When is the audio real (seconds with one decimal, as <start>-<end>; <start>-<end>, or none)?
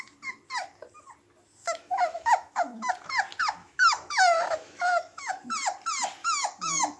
0.0-1.6; 2.9-3.6; 5.3-6.2